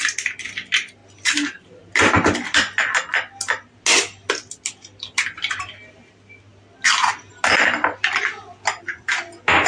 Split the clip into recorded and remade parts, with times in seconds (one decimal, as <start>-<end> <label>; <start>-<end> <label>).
0.0-9.7 recorded